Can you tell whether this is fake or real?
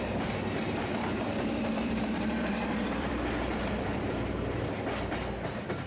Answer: fake